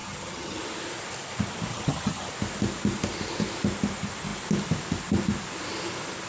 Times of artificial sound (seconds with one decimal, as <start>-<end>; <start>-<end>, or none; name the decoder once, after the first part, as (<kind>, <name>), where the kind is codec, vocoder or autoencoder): 0.0-0.6 (vocoder, HiFi-GAN); 1.7-2.3